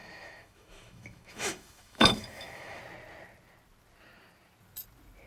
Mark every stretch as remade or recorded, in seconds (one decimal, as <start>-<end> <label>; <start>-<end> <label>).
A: 0.0-2.8 remade; 2.8-5.3 recorded